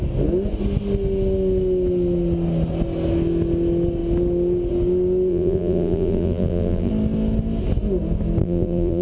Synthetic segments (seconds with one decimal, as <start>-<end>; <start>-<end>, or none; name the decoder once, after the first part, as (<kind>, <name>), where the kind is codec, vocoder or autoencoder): 5.3-6.9 (vocoder, BigVGAN v2); 8.4-9.0